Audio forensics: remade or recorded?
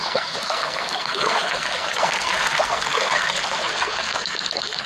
remade